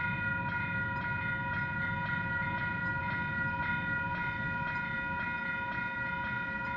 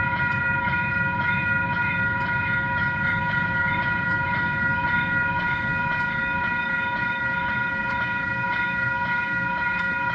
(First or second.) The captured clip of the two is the first